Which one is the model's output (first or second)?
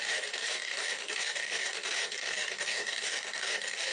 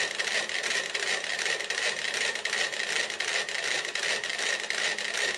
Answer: first